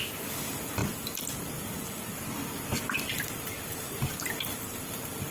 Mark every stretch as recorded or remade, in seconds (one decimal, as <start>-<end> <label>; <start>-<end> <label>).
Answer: 0.0-5.3 recorded